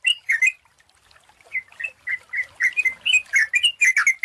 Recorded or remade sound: recorded